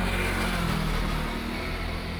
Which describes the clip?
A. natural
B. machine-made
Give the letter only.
A